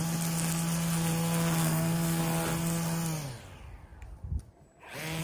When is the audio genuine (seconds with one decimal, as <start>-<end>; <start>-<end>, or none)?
0.0-1.6; 2.2-5.2